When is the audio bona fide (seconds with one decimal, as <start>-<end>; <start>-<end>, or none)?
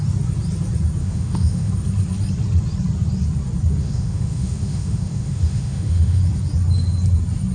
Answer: 0.0-1.0; 1.7-3.8; 6.2-7.5